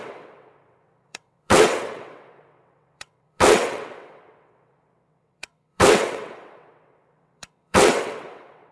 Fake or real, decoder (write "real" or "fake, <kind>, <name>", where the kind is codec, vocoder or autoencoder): fake, vocoder, WaveNeXt